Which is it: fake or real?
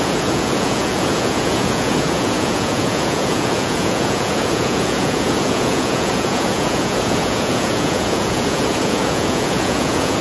fake